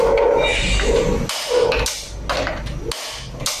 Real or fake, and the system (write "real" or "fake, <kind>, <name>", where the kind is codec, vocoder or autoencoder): real